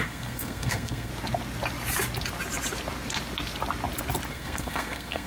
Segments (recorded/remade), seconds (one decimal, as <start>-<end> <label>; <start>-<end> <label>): 0.0-1.1 remade; 1.1-4.3 recorded; 4.3-5.3 remade